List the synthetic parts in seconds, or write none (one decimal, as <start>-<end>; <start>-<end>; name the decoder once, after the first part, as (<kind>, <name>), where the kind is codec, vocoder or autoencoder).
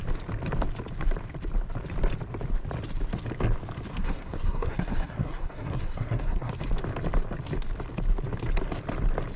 3.9-6.5 (codec, SNAC)